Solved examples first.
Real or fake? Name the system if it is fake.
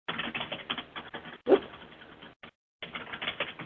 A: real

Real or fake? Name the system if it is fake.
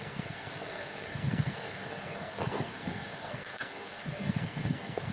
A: fake, codec, SNAC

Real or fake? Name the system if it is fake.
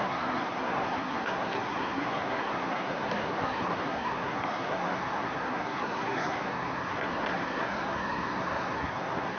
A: fake, codec, SNAC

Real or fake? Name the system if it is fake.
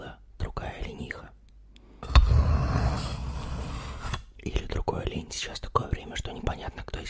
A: real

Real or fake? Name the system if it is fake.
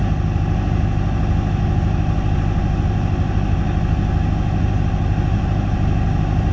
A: real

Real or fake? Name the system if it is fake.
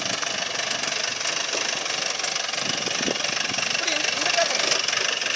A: real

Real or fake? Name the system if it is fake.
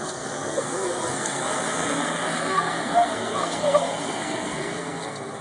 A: fake, codec, SNAC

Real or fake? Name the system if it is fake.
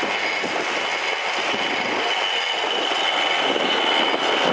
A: real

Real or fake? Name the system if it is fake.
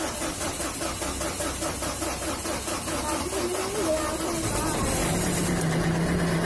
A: real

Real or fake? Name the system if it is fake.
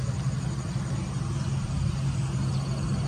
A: real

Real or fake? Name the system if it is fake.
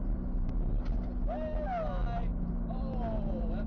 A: real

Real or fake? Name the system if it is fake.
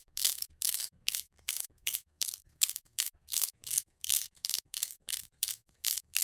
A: fake, codec, SNAC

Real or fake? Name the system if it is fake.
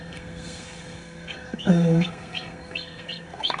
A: fake, codec, SNAC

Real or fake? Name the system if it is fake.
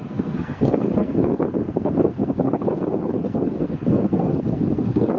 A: fake, codec, SNAC